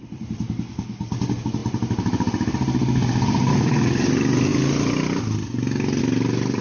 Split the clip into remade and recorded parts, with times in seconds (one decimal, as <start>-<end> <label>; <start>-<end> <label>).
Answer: 0.0-1.6 remade; 1.6-3.5 recorded; 3.5-4.5 remade; 4.5-6.0 recorded; 6.0-6.6 remade